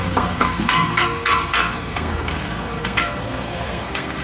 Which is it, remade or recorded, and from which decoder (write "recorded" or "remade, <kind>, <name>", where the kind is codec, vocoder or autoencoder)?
remade, codec, SNAC